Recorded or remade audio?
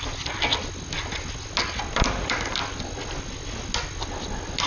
recorded